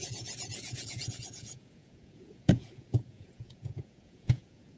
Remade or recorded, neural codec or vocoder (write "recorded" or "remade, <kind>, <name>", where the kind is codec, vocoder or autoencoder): remade, vocoder, Vocos